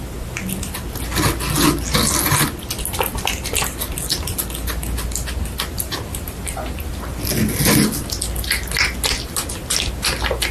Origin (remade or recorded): recorded